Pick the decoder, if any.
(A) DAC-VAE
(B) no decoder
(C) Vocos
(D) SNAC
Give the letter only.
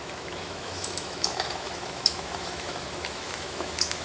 A